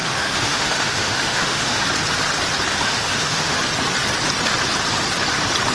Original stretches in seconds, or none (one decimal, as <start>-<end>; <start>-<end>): 1.8-2.7; 3.6-5.7